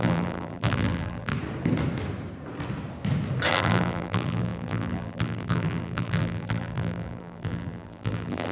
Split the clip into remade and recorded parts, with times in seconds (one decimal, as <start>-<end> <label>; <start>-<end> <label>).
0.0-1.3 remade; 1.3-3.5 recorded; 3.5-8.5 remade